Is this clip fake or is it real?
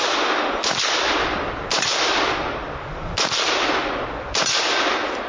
real